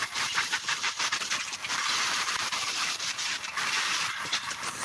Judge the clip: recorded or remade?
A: remade